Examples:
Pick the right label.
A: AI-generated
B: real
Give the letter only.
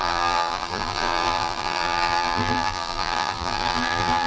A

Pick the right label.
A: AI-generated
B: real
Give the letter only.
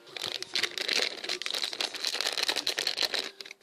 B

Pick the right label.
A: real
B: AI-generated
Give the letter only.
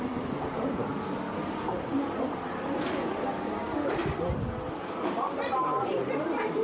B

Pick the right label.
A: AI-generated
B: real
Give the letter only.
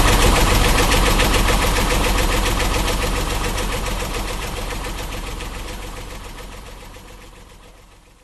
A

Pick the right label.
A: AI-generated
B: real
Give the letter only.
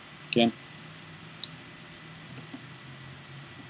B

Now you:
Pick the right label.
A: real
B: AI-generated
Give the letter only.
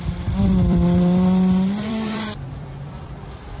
B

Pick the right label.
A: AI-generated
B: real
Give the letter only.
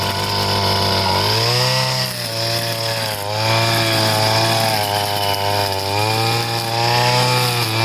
B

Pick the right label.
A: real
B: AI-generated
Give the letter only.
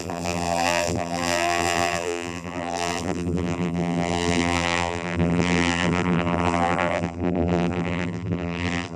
B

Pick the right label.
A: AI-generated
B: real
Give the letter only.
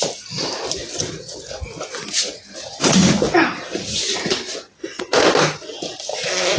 B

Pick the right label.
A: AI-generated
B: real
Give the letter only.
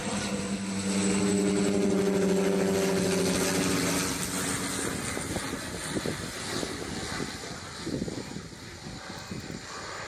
B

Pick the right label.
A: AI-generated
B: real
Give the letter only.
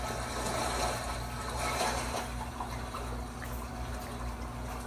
B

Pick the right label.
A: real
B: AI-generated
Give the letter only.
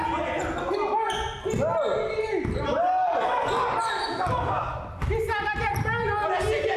A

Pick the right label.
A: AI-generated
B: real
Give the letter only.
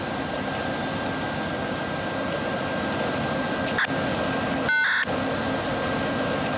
B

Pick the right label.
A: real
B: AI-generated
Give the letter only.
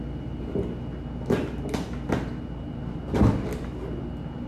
A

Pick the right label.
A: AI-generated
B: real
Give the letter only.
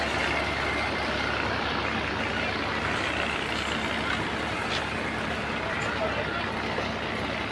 B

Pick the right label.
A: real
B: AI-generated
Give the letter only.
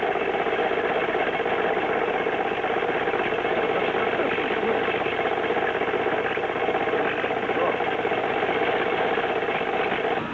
A